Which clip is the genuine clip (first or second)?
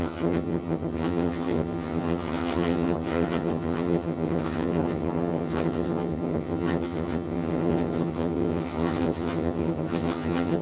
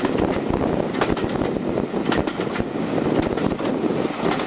second